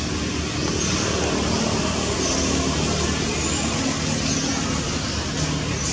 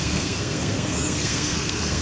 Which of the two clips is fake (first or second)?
second